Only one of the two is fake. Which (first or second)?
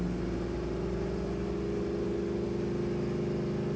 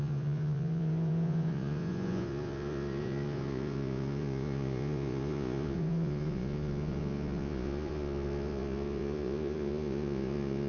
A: second